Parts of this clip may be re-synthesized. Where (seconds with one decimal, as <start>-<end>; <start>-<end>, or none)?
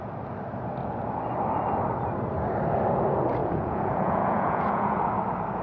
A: 3.4-5.0